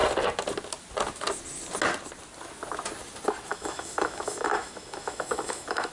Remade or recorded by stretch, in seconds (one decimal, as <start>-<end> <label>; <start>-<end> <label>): 0.0-3.5 recorded; 3.5-5.9 remade